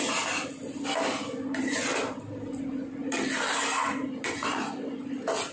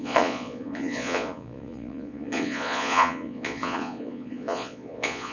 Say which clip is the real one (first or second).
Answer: first